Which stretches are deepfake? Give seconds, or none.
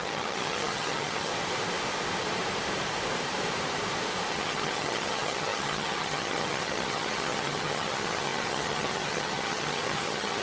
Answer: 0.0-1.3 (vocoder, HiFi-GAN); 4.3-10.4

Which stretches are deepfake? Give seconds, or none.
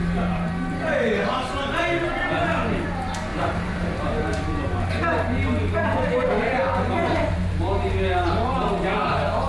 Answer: 0.0-2.1 (vocoder, BigVGAN v2); 3.3-4.9; 5.6-8.7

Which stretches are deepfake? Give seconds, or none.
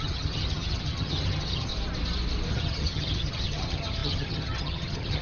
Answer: 0.0-1.7 (vocoder, HiFi-GAN); 2.5-5.2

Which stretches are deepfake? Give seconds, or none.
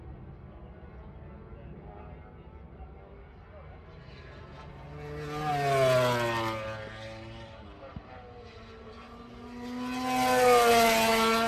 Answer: none